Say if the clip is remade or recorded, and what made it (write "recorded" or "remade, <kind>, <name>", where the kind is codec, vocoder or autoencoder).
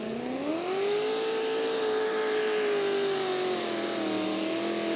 recorded